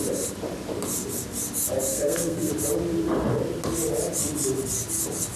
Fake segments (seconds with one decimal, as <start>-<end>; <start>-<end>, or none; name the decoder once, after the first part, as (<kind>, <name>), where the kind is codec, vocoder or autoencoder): 1.9-2.5 (codec, SNAC)